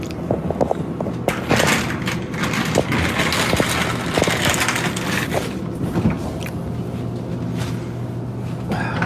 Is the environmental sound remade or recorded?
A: recorded